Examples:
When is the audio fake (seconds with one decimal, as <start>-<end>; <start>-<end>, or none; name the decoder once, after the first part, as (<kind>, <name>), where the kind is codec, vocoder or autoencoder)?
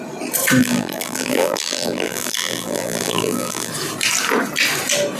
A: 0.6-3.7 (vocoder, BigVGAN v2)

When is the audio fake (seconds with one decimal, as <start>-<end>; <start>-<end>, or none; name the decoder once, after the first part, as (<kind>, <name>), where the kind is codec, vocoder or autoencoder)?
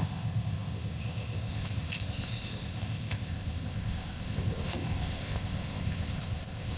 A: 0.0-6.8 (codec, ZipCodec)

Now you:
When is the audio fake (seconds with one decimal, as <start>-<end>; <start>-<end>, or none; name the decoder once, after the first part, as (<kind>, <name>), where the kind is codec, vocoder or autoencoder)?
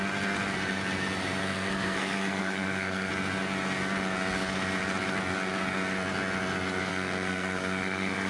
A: 1.4-3.1 (codec, SNAC); 6.9-8.3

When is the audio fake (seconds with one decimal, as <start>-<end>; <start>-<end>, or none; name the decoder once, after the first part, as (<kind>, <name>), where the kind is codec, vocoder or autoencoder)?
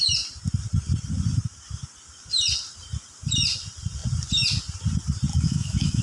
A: 5.3-6.0 (autoencoder, DAC-VAE)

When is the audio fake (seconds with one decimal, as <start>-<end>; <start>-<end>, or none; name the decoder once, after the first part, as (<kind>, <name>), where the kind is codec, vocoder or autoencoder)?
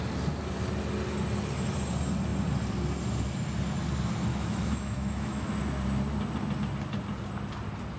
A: 4.3-5.5 (autoencoder, DAC-VAE)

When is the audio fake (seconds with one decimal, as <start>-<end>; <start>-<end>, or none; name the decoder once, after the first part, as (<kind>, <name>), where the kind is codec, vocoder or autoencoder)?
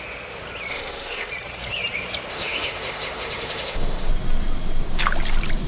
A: 0.7-1.3 (autoencoder, DAC-VAE); 2.3-4.1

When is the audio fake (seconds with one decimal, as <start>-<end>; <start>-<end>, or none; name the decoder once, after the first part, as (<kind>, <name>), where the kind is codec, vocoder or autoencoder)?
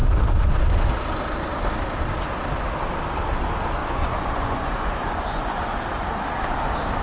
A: 3.8-5.8 (vocoder, Vocos)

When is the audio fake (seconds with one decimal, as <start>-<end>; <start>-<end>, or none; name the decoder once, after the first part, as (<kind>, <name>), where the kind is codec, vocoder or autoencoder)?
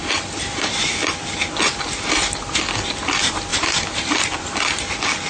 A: 0.0-0.7 (vocoder, BigVGAN v2); 3.5-4.2